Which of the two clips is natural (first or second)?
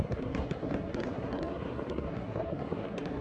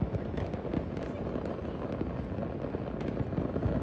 second